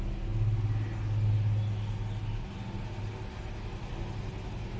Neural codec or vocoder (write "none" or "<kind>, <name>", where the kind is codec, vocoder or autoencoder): none